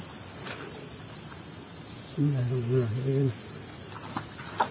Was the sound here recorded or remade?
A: recorded